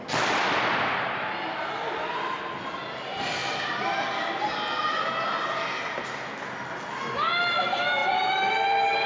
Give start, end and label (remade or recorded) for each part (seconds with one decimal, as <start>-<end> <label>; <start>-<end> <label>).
0.0-9.1 recorded